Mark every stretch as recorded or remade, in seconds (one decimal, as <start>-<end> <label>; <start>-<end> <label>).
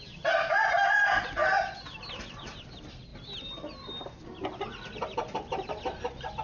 0.0-6.4 recorded